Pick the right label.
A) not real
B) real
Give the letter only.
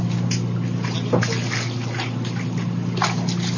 B